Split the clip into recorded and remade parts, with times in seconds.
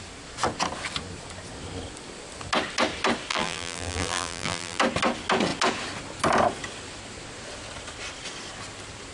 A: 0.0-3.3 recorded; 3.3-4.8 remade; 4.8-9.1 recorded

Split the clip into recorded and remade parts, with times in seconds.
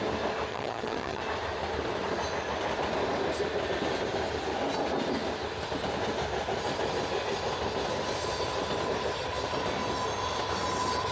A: 0.0-0.5 recorded; 0.5-1.2 remade; 1.2-11.1 recorded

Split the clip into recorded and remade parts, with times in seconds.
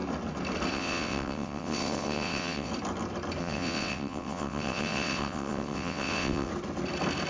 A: 0.0-0.7 recorded; 0.7-2.7 remade; 2.7-3.4 recorded; 3.4-6.5 remade; 6.5-7.3 recorded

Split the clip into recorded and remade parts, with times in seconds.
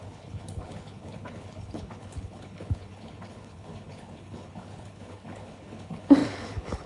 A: 0.0-6.9 remade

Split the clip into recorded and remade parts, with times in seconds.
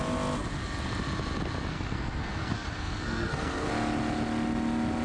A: 0.0-1.7 recorded; 1.7-3.7 remade; 3.7-5.0 recorded